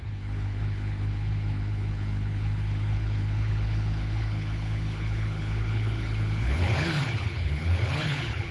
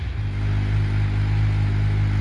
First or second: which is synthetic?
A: first